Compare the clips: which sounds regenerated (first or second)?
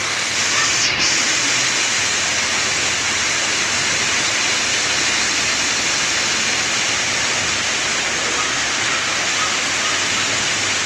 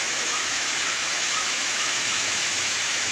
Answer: second